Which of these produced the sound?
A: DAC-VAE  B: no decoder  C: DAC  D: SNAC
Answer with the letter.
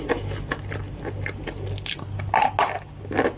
B